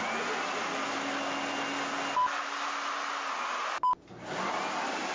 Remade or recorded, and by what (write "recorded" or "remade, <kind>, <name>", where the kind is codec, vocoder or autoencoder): recorded